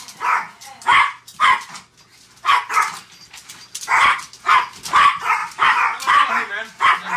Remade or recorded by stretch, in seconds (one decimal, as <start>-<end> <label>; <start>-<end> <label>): 0.0-5.4 recorded; 5.4-6.3 remade; 6.3-7.2 recorded